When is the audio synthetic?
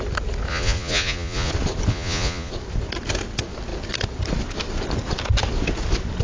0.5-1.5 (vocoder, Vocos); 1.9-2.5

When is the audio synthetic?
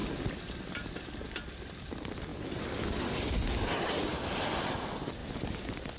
0.7-2.3 (vocoder, BigVGAN v2); 3.6-6.0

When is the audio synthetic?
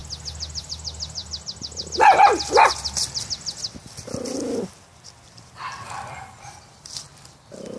none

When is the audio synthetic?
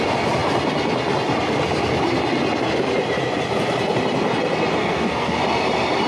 4.8-5.4 (codec, SNAC)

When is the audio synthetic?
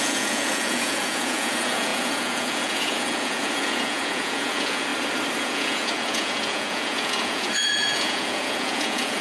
0.0-4.9 (vocoder, Vocos); 5.4-9.2